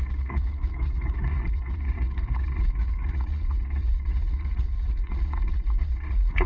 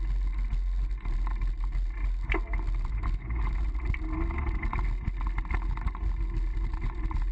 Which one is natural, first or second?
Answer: second